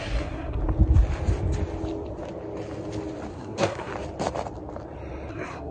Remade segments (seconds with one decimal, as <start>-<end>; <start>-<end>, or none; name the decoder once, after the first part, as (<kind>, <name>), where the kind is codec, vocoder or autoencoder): 0.0-0.6 (codec, SNAC); 3.3-3.9; 5.3-5.7